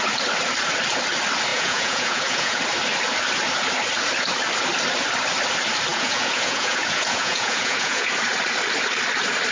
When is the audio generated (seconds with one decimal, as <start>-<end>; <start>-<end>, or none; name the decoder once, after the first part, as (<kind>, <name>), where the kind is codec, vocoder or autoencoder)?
1.5-2.6 (vocoder, Vocos); 5.9-8.1